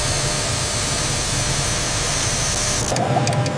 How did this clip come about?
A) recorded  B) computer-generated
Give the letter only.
A